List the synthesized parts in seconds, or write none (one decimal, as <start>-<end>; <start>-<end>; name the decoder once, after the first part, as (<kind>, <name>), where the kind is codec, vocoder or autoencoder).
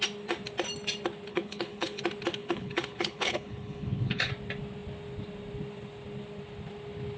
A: 1.3-2.0 (codec, HILCodec); 2.4-4.3